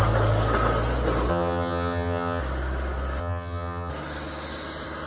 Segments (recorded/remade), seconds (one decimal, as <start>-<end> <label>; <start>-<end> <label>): 0.0-1.3 recorded; 1.3-2.4 remade; 2.4-3.2 recorded; 3.2-3.9 remade; 3.9-5.1 recorded